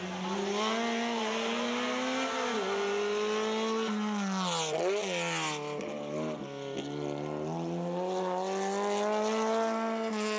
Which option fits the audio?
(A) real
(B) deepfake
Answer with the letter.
A